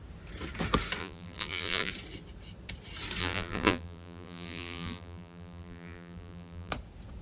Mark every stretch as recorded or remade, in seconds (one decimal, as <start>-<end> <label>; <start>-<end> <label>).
0.0-1.0 recorded; 1.0-1.9 remade; 1.9-3.2 recorded; 3.2-6.7 remade; 6.7-7.2 recorded